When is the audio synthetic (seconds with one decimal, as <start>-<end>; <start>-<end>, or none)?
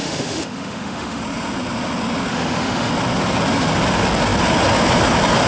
0.0-1.2; 2.3-2.9